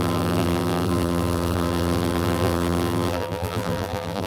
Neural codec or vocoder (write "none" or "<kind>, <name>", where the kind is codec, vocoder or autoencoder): vocoder, BigVGAN v2